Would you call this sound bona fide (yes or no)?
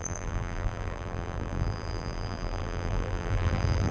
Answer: no